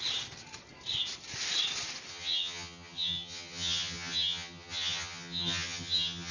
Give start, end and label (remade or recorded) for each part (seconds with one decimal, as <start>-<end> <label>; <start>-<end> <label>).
0.0-2.1 recorded; 2.1-6.3 remade